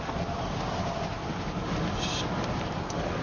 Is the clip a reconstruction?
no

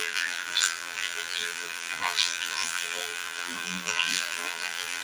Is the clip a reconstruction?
yes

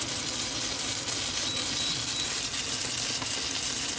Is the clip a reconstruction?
no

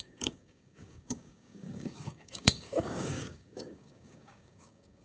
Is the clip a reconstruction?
yes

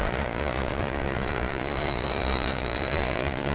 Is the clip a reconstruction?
yes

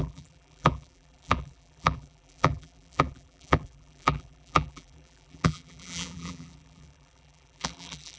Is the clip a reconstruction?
yes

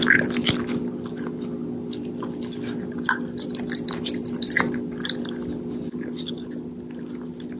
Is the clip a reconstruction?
no